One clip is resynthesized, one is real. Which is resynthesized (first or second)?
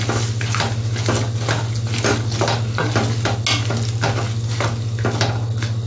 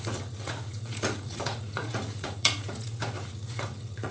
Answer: second